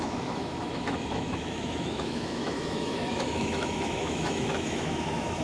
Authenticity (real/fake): fake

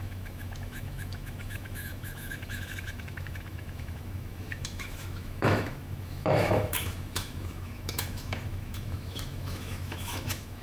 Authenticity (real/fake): fake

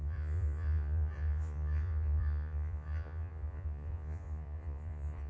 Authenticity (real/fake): fake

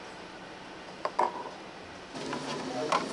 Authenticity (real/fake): real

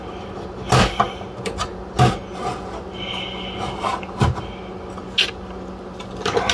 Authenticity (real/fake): real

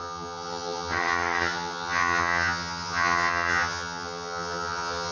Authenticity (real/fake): fake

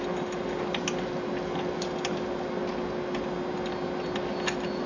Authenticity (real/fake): real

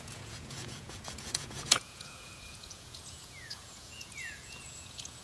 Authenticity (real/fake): fake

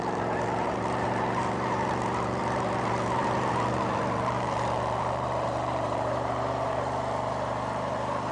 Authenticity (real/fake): fake